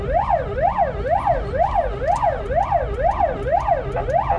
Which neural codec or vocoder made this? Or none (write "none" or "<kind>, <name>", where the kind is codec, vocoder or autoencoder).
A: none